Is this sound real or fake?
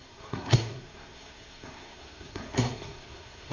fake